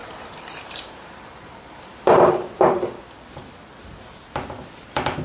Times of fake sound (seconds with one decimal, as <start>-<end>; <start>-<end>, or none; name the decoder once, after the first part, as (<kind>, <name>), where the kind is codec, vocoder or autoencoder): 0.0-3.0 (vocoder, BigVGAN v2)